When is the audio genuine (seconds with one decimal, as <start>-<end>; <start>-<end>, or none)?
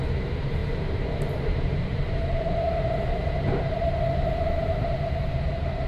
none